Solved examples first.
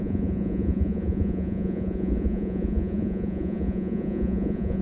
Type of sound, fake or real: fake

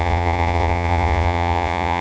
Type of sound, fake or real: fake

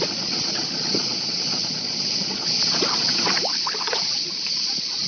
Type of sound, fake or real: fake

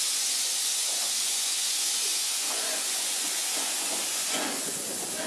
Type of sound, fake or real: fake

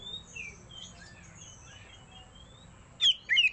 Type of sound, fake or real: real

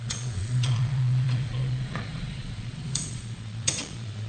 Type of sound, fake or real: fake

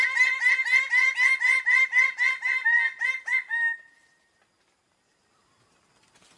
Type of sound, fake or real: real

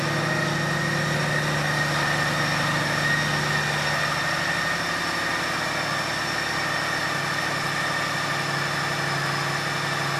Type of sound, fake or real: real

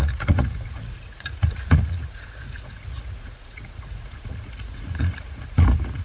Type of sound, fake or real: fake